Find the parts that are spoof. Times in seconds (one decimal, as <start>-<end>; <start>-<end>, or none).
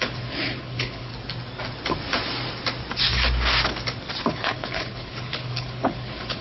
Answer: 0.0-1.1; 4.3-6.4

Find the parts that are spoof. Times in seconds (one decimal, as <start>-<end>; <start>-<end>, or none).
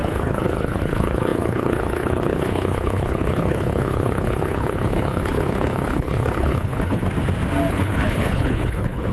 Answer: 0.0-7.0; 7.7-9.1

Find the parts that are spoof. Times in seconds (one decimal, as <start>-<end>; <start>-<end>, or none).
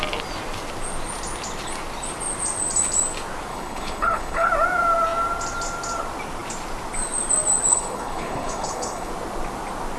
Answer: 3.5-4.5; 7.7-9.1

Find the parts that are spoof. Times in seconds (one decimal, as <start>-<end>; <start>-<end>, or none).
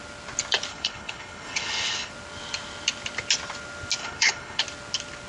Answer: 0.7-2.1; 4.0-4.6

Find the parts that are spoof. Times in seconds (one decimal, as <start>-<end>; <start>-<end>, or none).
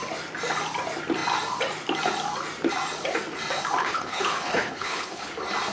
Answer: 3.8-5.3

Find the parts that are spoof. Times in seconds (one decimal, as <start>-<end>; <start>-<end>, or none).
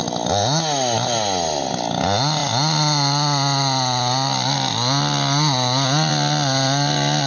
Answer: none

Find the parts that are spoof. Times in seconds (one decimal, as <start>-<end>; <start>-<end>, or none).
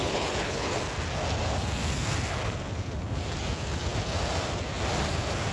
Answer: 0.0-0.8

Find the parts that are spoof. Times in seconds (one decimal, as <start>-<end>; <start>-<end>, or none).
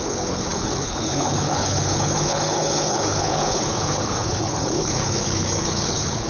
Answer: 0.0-6.3